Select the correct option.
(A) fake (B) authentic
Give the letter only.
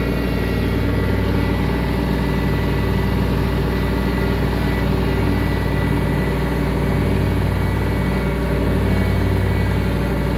B